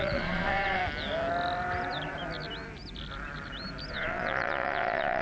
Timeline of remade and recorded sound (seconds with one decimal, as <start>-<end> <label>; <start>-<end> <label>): 0.0-0.8 remade; 0.8-3.9 recorded; 3.9-5.2 remade